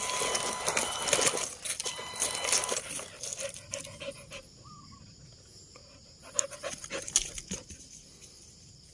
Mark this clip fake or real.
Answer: real